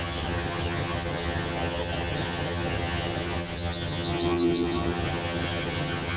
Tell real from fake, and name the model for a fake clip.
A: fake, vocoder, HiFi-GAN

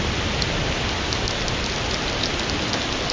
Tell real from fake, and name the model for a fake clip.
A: real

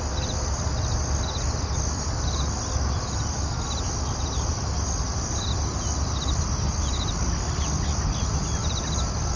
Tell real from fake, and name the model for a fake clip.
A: real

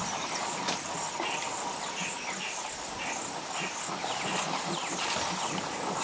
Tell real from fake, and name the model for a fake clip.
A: real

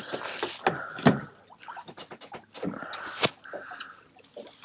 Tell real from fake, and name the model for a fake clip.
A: real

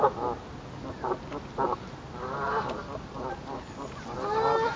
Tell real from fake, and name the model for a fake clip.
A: real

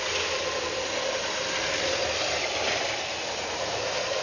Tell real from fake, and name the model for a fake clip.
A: real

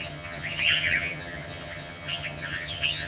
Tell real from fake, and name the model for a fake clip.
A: fake, vocoder, HiFi-GAN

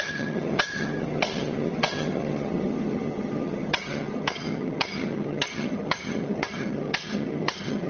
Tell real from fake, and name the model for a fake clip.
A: fake, vocoder, HiFi-GAN